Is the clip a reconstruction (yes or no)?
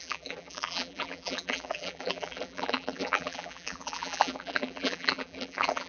yes